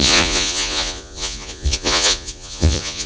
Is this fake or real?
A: fake